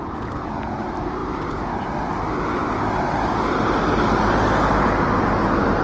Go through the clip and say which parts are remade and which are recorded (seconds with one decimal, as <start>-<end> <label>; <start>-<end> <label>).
0.0-5.8 recorded